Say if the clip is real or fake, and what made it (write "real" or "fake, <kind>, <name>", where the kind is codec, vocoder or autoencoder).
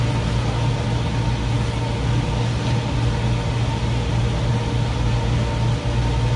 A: real